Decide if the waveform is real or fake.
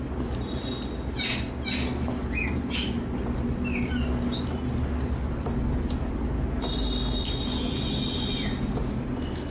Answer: real